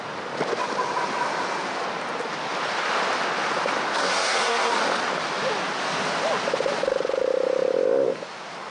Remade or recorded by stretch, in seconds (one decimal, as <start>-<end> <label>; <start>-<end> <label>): 0.0-4.0 recorded; 4.0-4.7 remade; 4.7-8.7 recorded